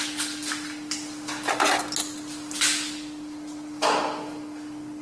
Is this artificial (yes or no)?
no